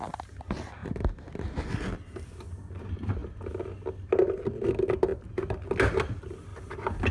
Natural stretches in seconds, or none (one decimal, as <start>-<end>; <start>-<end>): 0.0-7.1